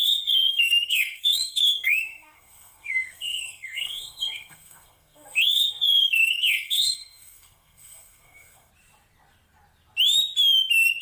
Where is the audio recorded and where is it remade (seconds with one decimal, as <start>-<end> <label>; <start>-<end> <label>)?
0.0-8.7 remade; 8.7-11.0 recorded